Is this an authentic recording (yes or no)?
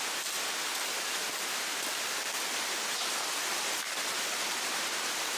yes